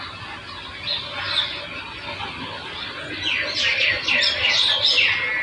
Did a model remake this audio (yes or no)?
no